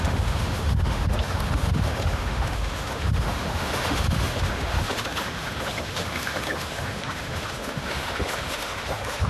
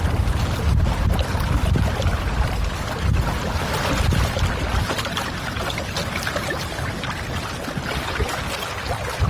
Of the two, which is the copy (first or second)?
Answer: first